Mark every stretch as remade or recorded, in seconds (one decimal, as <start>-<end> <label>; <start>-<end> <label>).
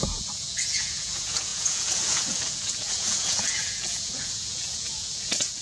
0.0-5.6 remade